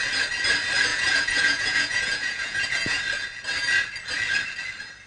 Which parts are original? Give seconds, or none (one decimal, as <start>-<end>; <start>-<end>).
0.0-0.9; 3.0-5.1